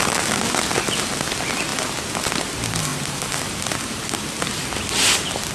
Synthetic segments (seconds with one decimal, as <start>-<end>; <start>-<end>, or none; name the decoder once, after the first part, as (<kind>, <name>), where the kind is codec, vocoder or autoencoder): none

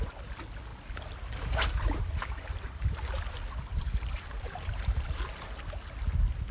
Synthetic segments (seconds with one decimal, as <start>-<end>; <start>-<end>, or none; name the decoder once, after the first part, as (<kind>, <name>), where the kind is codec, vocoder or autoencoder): 3.7-5.2 (vocoder, BigVGAN v2)

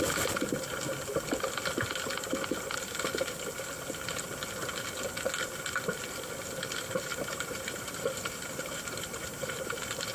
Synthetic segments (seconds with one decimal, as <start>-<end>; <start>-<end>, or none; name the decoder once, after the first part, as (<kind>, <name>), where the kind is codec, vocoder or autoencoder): 7.1-10.1 (vocoder, BigVGAN v2)

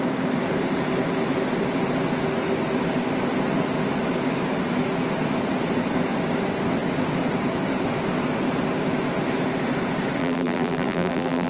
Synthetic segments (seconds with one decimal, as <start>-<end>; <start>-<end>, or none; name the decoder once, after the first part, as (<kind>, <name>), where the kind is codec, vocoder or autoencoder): 10.2-11.5 (vocoder, BigVGAN v2)

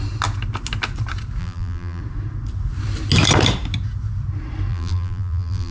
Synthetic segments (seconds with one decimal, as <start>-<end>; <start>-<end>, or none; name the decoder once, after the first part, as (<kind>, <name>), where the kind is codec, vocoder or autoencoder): 1.4-2.0 (vocoder, BigVGAN v2); 4.7-5.7

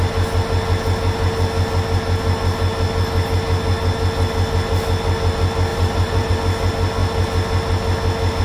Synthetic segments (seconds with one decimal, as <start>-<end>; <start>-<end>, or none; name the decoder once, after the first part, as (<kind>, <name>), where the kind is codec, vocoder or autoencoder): 5.7-6.3 (vocoder, BigVGAN v2)